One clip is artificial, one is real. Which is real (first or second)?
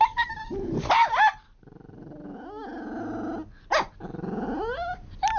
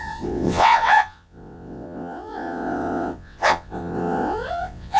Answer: first